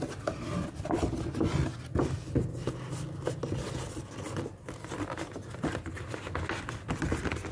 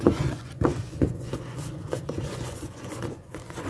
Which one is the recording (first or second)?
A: first